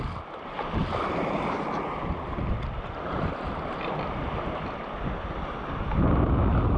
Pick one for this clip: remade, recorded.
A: recorded